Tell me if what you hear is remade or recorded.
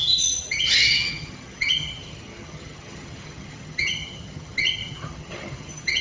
remade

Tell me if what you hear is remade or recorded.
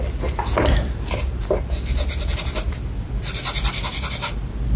recorded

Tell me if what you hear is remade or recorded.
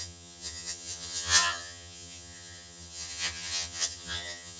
remade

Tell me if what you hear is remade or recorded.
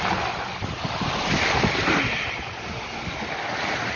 recorded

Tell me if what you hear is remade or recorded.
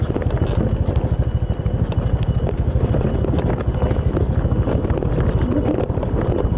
recorded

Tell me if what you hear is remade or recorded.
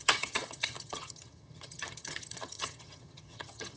remade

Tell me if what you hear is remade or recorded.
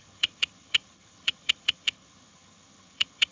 remade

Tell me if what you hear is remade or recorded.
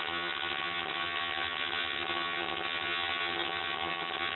remade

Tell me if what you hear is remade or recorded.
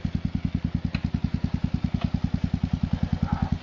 recorded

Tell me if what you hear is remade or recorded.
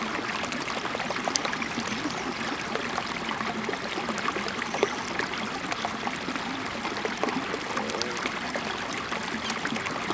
recorded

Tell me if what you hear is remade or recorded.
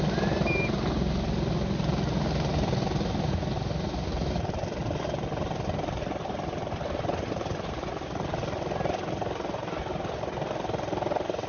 recorded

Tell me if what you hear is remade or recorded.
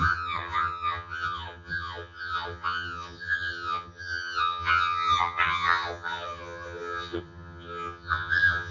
remade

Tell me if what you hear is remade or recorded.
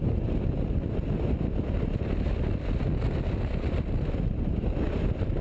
recorded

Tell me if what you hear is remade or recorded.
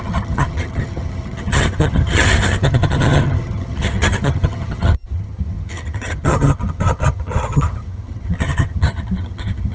remade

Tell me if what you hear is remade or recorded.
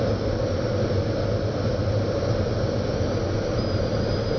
recorded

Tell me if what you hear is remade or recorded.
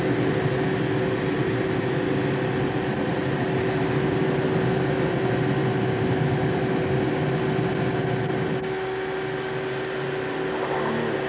recorded